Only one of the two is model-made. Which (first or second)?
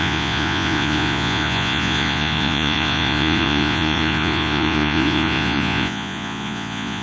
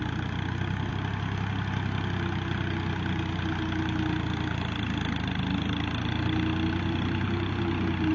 first